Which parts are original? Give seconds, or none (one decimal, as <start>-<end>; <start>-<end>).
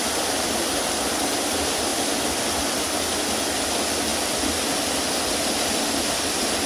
0.0-6.7